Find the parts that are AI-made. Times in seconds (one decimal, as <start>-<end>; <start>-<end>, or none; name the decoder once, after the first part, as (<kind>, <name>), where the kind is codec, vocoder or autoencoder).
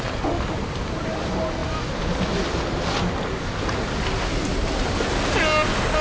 none